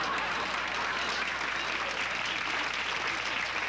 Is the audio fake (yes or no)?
no